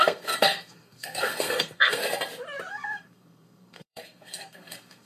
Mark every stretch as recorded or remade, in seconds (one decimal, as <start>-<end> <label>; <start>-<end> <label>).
0.0-2.0 remade; 2.0-2.7 recorded; 2.7-5.1 remade